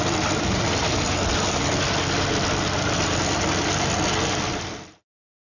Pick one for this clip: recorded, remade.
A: recorded